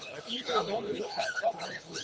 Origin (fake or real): fake